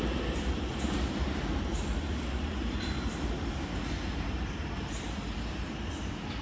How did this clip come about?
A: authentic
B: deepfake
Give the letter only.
A